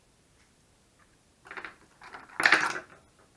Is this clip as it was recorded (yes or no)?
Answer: yes